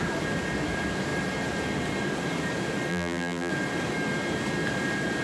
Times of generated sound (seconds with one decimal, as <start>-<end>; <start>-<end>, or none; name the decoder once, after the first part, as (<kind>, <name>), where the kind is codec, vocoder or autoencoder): 2.9-3.5 (vocoder, BigVGAN v2)